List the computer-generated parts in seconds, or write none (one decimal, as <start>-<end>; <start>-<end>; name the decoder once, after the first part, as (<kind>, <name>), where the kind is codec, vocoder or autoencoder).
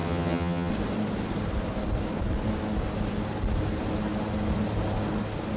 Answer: 0.0-0.7 (vocoder, HiFi-GAN)